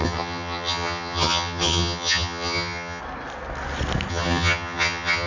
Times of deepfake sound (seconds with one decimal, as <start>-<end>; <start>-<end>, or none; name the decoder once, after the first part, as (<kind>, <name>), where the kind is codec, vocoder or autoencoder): 0.0-3.0 (vocoder, HiFi-GAN); 4.1-5.3